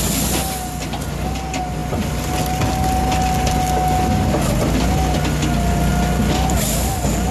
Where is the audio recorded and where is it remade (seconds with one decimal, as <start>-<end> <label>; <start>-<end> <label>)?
0.0-7.3 recorded